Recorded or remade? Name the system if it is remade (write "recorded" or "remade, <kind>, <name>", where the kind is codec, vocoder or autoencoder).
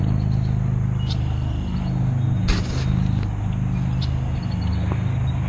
recorded